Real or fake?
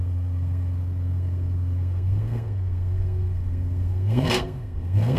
fake